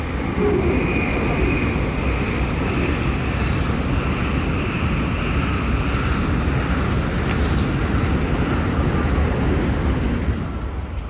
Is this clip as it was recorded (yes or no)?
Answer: yes